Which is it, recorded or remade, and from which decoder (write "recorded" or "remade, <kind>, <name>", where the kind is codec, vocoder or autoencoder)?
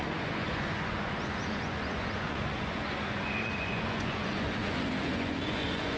remade, vocoder, Vocos